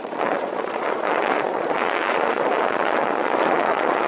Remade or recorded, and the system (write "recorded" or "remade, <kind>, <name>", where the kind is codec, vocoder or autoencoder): remade, vocoder, Vocos